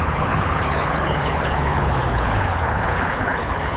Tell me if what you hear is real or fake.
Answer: fake